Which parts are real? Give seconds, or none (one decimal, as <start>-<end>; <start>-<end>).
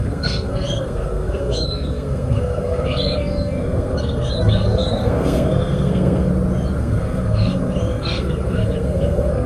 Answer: 6.3-6.8